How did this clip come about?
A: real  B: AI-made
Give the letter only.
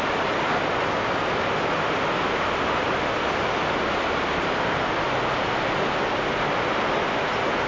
A